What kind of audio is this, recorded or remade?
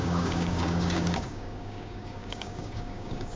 remade